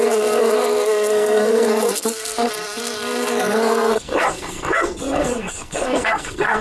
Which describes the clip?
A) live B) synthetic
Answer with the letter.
B